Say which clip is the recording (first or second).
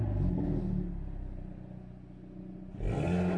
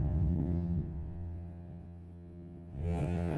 first